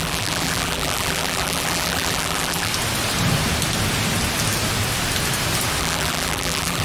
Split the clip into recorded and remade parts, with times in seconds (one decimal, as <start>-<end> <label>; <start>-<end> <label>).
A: 0.0-2.7 remade; 2.7-5.8 recorded; 5.8-6.8 remade